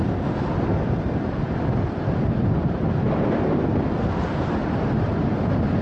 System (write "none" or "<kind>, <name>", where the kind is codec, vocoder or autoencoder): none